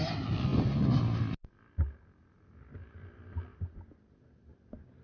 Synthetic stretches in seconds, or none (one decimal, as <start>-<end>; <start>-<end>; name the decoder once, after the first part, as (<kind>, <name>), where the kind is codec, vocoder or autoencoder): none